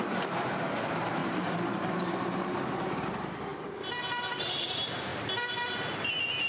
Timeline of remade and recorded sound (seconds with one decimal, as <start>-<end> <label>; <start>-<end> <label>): 0.0-1.2 recorded; 1.2-3.1 remade; 3.1-3.5 recorded; 3.5-4.6 remade; 4.6-6.5 recorded